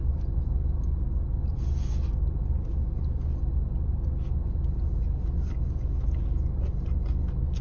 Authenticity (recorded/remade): recorded